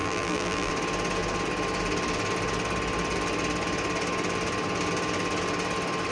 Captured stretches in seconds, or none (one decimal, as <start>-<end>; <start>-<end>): 0.7-6.1